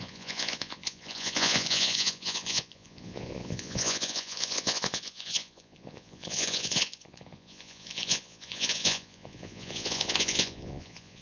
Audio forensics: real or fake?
fake